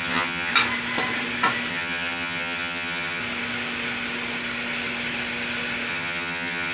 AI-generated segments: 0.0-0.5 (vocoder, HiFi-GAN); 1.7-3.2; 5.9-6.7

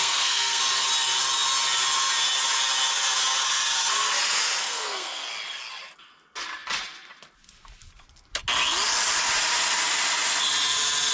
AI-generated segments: 0.0-0.6 (codec, SNAC); 4.6-5.3

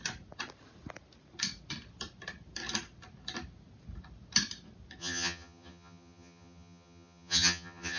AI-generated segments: 5.0-8.0 (vocoder, HiFi-GAN)

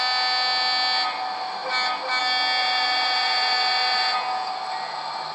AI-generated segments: 2.6-4.5 (vocoder, Vocos)

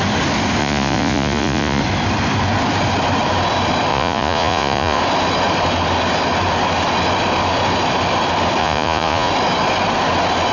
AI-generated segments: 0.6-1.8 (vocoder, Vocos); 3.9-5.0; 8.6-9.3